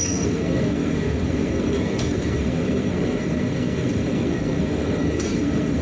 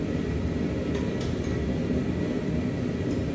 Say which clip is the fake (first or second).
first